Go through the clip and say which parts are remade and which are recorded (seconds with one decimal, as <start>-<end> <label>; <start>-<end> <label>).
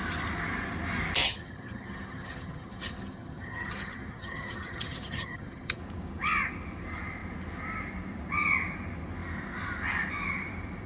0.0-1.2 recorded; 1.2-5.8 remade; 5.8-10.9 recorded